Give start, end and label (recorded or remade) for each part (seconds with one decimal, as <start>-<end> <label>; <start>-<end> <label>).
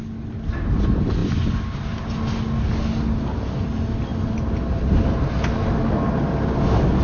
0.0-7.0 recorded